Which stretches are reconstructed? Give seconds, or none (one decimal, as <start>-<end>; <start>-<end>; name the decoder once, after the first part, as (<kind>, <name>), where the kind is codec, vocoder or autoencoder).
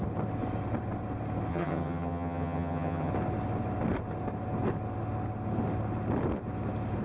1.5-3.1 (vocoder, HiFi-GAN)